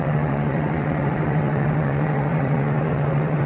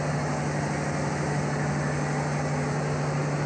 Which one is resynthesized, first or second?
first